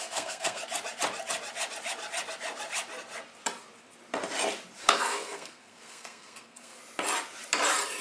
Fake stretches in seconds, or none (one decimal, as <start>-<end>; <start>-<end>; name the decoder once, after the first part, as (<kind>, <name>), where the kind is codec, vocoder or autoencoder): 0.0-0.6 (codec, SNAC); 4.8-6.8